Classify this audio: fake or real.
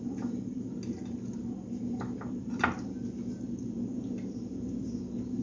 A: real